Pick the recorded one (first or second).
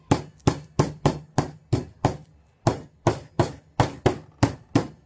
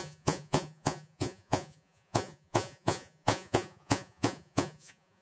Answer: first